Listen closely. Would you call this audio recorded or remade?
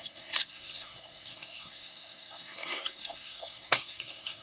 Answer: remade